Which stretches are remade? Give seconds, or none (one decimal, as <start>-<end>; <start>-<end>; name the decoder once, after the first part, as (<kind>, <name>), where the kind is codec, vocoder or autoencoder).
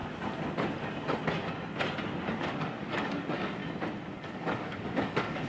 2.3-3.6 (codec, DAC); 4.3-5.5